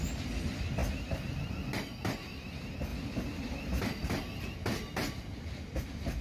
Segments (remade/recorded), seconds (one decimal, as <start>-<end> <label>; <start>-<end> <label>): 0.0-6.2 recorded